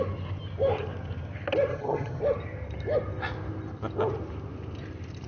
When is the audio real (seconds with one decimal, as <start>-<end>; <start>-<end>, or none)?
0.0-1.7; 2.2-5.3